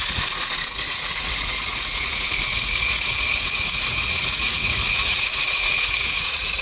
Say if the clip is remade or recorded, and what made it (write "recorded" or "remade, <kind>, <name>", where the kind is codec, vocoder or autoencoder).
remade, vocoder, Vocos